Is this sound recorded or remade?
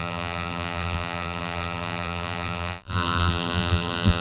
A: remade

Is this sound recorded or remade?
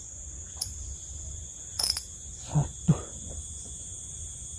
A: remade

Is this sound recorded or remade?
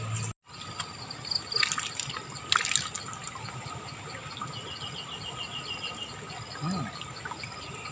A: recorded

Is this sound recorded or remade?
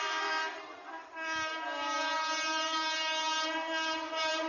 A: remade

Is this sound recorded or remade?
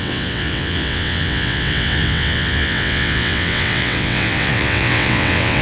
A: remade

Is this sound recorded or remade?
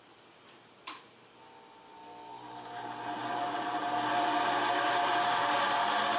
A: recorded